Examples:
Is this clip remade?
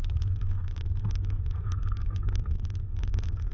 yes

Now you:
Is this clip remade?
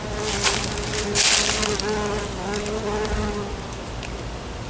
no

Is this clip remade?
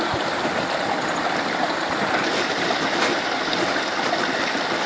no